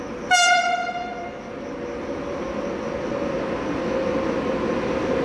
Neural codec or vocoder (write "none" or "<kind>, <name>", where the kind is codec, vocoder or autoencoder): none